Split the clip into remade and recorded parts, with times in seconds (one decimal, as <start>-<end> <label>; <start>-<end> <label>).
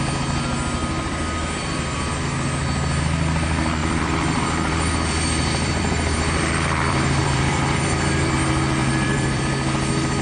0.0-3.8 recorded; 3.8-8.3 remade; 8.3-8.8 recorded; 8.8-9.4 remade; 9.4-10.2 recorded